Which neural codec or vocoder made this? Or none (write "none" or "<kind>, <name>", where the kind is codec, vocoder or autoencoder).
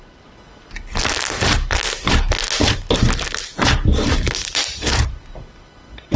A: none